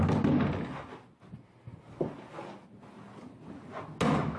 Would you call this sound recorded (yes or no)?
yes